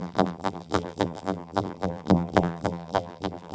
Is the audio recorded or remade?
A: remade